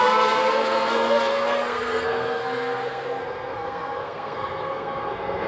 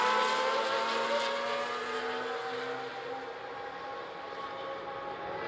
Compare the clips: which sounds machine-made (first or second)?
first